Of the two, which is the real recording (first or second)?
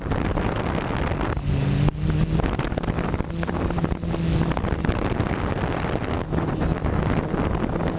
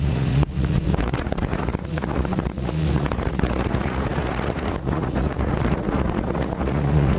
first